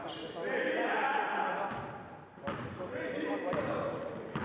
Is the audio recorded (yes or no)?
yes